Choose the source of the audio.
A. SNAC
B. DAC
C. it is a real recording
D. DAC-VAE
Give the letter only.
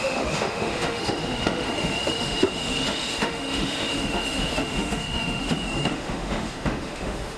D